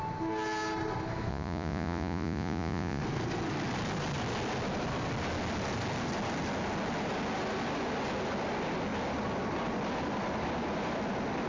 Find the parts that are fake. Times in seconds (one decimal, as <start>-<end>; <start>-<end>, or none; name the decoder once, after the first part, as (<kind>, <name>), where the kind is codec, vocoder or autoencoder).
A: 1.3-3.0 (vocoder, Vocos)